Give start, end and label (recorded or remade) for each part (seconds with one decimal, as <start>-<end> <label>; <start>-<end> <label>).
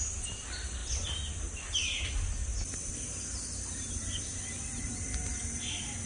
0.0-6.1 recorded